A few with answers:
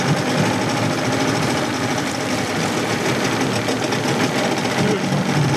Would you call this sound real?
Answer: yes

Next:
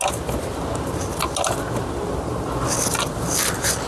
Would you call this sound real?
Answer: yes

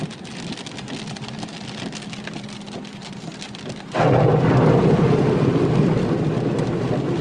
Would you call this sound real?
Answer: yes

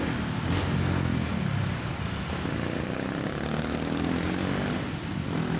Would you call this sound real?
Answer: yes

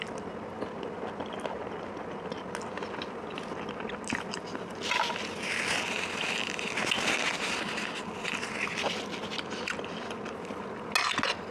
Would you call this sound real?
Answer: yes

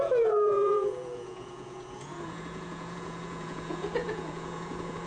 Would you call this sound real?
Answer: no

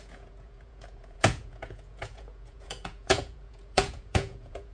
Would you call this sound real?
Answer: no